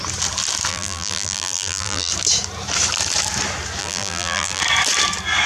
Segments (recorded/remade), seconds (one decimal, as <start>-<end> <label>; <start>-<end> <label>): 0.0-0.7 recorded; 0.7-2.1 remade; 2.1-3.8 recorded; 3.8-4.6 remade; 4.6-5.5 recorded